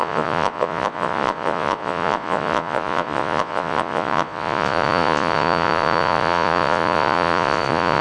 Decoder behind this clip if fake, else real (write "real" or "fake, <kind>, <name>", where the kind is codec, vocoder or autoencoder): fake, vocoder, Vocos